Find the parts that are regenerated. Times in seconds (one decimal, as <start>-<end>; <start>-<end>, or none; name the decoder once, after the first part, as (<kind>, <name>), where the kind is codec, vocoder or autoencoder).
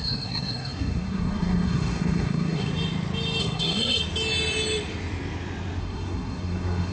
0.0-2.7 (codec, SNAC); 3.4-4.0; 5.8-6.9